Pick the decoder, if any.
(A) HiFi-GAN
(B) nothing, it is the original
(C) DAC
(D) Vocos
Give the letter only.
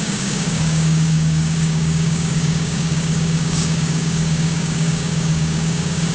C